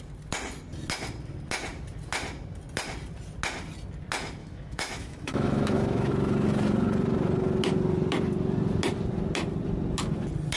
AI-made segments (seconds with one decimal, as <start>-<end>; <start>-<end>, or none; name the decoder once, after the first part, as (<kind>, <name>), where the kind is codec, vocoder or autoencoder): 4.4-6.1 (autoencoder, DAC-VAE)